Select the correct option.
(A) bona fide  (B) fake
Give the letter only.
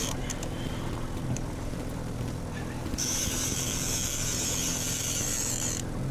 B